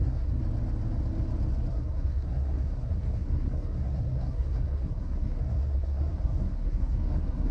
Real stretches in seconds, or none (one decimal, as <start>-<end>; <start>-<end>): 0.4-1.7

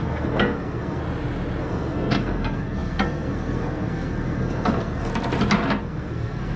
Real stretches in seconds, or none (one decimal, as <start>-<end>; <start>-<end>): 1.0-1.6; 5.1-5.8